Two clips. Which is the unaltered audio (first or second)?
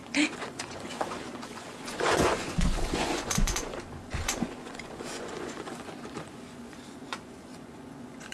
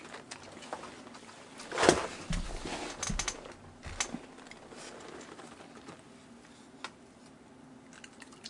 second